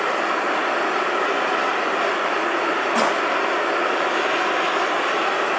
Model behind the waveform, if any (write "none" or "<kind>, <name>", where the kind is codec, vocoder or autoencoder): none